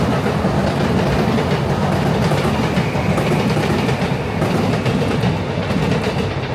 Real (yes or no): yes